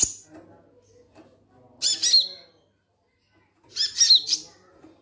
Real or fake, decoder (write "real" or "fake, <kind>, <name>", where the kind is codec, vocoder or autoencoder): real